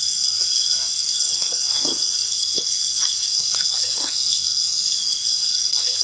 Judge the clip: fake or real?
fake